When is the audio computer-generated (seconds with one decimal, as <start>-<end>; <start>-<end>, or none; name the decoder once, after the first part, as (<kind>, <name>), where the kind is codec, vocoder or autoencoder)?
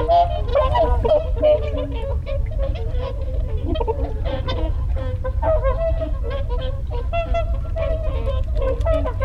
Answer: 0.5-1.1 (vocoder, BigVGAN v2); 2.1-6.4